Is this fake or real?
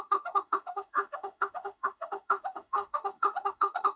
fake